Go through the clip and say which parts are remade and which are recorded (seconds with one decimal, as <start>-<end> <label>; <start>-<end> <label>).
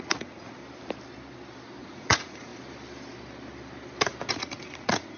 0.0-0.6 remade; 0.6-1.8 recorded; 1.8-2.5 remade; 2.5-4.3 recorded; 4.3-5.2 remade